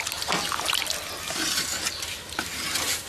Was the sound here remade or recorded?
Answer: recorded